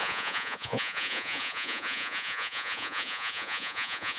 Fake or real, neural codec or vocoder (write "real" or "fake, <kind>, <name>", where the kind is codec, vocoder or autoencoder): fake, vocoder, Vocos